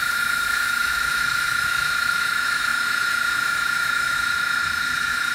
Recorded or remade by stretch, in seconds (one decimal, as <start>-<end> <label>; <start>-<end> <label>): 0.0-5.3 remade